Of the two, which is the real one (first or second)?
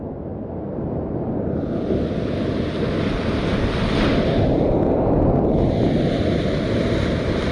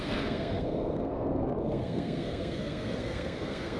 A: first